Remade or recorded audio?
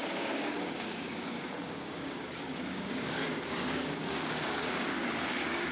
remade